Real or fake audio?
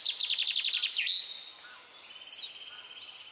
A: real